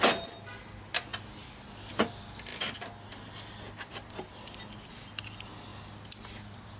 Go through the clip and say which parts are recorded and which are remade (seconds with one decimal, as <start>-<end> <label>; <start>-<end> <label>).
0.0-6.8 recorded